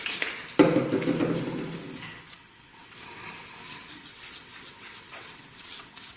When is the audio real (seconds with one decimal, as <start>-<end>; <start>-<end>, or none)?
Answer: 0.0-2.7; 3.3-4.1

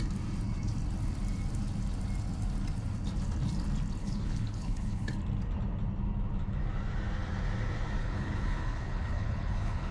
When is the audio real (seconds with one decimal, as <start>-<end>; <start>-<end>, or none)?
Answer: 0.0-4.0; 5.1-8.0

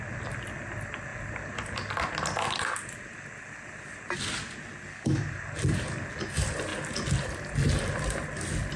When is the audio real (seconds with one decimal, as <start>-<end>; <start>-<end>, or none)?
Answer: 0.0-8.8

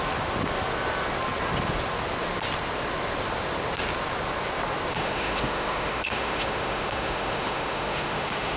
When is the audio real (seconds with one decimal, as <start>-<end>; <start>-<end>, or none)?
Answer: 0.0-4.9